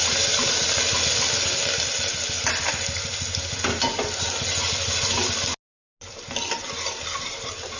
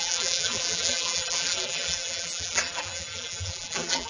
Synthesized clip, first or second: second